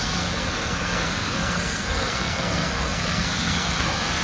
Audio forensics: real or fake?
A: fake